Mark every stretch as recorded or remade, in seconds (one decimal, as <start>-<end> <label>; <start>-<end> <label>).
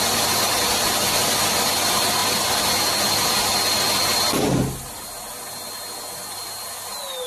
0.0-7.3 recorded